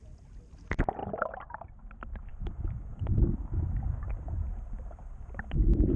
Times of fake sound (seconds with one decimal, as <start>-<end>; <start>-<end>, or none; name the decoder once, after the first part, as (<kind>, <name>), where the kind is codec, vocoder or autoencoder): 1.0-1.8 (vocoder, BigVGAN v2); 2.3-3.5; 4.0-5.4